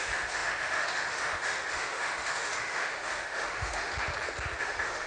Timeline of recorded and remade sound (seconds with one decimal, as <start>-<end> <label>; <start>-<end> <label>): 0.0-3.9 remade; 3.9-4.6 recorded; 4.6-5.1 remade